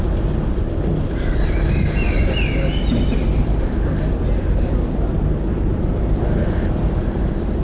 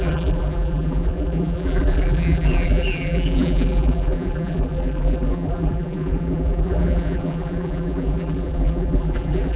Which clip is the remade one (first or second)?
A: second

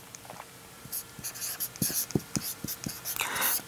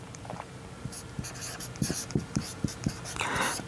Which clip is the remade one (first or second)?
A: second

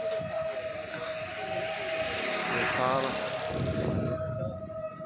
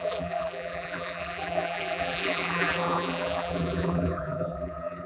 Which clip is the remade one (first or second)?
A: second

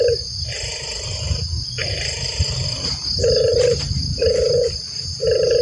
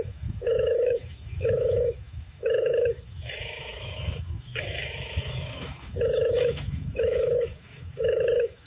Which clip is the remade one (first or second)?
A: second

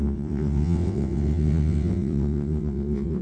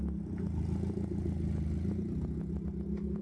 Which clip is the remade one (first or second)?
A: first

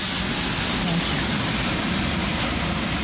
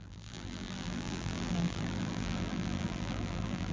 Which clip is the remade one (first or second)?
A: second